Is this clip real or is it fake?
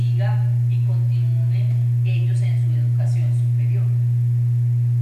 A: real